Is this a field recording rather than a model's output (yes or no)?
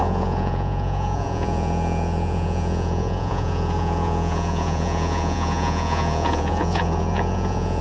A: no